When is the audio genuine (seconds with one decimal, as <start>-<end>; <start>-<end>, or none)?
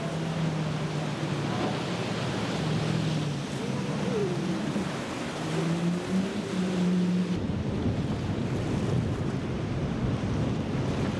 0.0-4.2; 5.0-6.3; 9.4-11.2